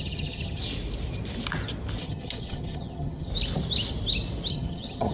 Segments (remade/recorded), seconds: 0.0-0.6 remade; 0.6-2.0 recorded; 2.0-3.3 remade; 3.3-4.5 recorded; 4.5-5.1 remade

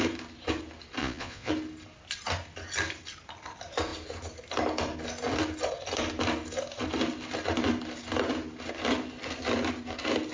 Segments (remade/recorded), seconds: 0.0-1.0 recorded; 1.0-1.5 remade; 1.5-10.3 recorded

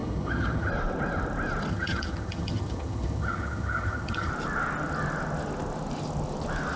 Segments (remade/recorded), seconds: 0.0-0.7 remade; 0.7-1.7 recorded; 1.7-4.3 remade; 4.3-6.8 recorded